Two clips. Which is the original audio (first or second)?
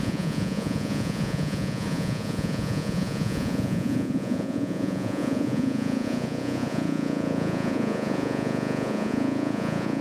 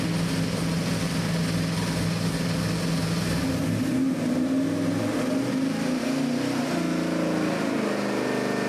second